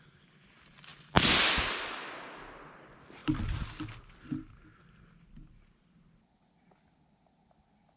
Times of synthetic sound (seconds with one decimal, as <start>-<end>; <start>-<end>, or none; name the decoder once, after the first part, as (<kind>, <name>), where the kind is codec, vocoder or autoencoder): 3.2-4.4 (vocoder, BigVGAN v2)